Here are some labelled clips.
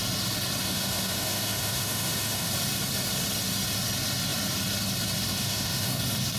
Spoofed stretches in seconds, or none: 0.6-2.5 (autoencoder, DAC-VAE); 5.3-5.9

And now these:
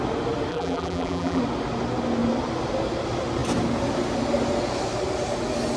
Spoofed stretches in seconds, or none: 0.5-1.4 (vocoder, BigVGAN v2)

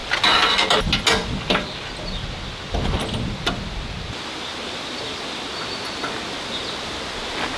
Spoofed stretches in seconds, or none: none

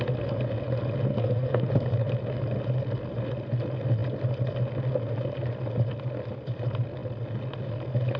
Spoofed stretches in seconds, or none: 1.1-1.7 (codec, SNAC)

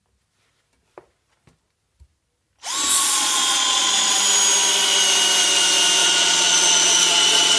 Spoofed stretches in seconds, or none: 2.9-4.2 (vocoder, Vocos); 6.0-7.6

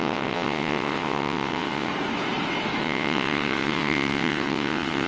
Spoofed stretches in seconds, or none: 0.0-1.9 (vocoder, WaveNeXt); 2.8-5.1